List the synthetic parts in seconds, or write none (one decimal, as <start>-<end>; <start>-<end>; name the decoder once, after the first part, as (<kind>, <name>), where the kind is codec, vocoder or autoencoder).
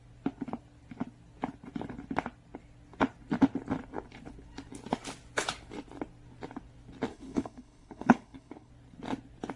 7.1-8.7 (codec, HILCodec)